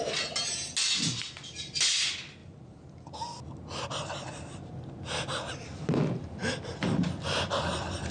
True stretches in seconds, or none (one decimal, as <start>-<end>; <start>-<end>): 0.0-8.1